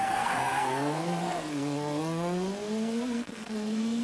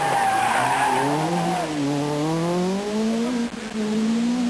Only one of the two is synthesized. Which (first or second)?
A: first